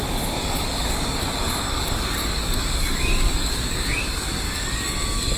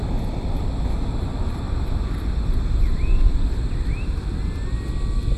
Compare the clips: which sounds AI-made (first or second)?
first